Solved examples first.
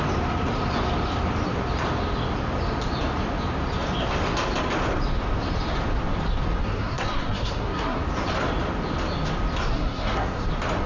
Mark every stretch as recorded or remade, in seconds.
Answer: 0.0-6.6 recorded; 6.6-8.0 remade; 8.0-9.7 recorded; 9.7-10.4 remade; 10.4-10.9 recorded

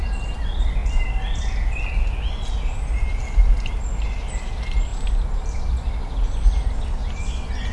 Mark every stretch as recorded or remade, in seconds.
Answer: 0.0-7.7 recorded

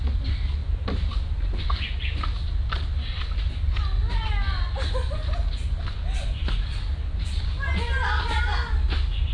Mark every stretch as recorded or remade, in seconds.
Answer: 0.0-9.3 recorded